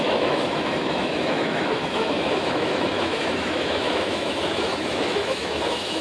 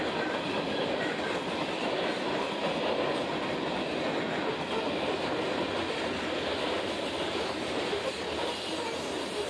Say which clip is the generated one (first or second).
first